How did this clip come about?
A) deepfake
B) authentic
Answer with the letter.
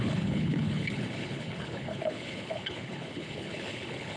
A